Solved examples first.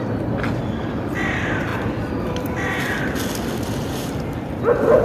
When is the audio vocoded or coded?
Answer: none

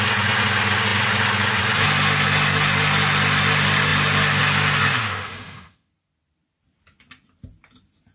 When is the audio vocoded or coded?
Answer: 5.0-5.9

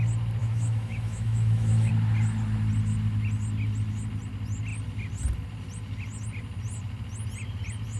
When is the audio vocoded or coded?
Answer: 0.4-1.9

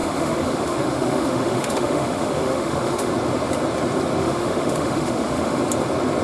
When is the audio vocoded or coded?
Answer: 0.0-3.1; 4.2-5.6

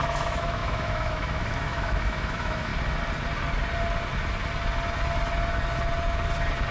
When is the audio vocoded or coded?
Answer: 0.0-2.7